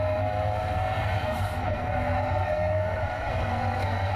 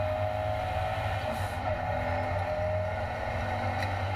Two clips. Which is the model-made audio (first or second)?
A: first